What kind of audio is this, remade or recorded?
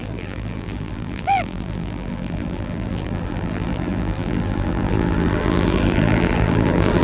remade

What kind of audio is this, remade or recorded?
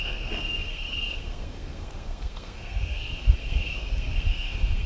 remade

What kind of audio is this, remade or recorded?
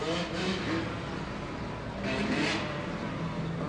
recorded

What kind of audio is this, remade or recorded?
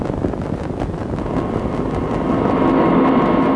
recorded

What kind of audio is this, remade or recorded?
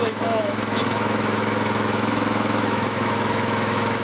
remade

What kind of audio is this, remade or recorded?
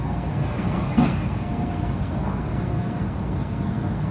remade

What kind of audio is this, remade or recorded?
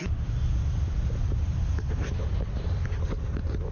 remade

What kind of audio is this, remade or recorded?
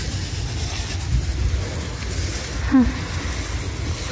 recorded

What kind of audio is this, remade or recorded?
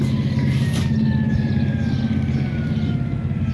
recorded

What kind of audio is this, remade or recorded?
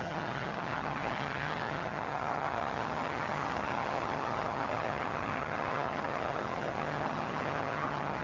remade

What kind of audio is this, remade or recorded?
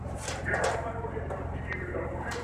remade